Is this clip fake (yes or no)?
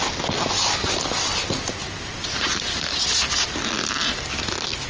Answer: no